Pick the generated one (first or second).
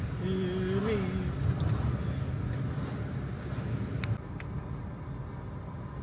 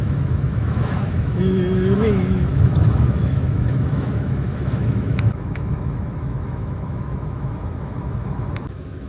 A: second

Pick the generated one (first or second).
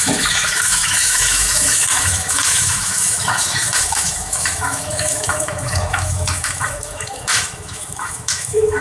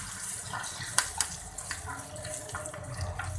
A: first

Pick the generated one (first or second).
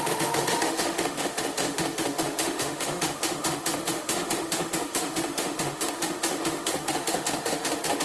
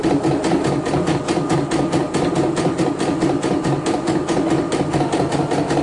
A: first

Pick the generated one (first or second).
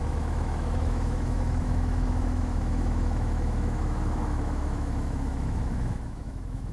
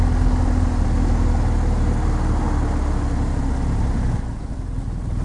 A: first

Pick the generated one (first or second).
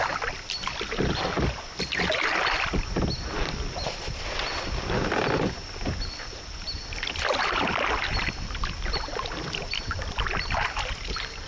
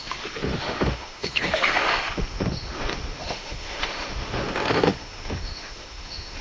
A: second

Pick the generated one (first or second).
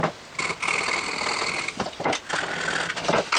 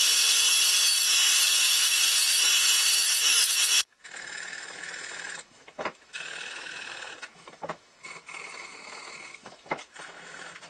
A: second